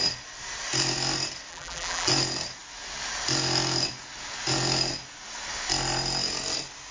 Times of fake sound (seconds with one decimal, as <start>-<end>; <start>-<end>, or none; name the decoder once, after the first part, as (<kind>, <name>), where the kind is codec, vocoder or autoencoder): 1.5-2.1 (vocoder, BigVGAN v2)